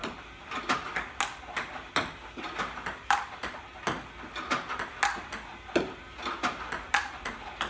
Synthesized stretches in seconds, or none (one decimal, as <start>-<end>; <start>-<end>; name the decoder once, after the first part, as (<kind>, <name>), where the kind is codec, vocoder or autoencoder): 3.0-3.7 (vocoder, BigVGAN v2); 6.9-7.7